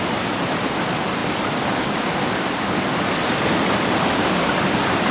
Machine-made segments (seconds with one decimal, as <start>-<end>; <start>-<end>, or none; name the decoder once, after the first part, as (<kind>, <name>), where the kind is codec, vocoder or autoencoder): none